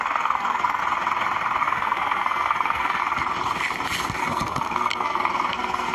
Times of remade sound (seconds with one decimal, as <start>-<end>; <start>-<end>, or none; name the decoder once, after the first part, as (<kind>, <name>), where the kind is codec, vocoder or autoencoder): 0.0-0.8 (codec, SNAC); 1.6-3.0; 4.2-5.9